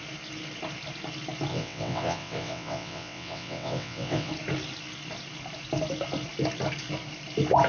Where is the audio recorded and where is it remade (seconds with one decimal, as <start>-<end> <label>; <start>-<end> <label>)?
0.0-1.5 recorded; 1.5-4.3 remade; 4.3-7.7 recorded